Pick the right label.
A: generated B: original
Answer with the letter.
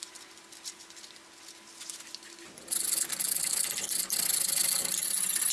B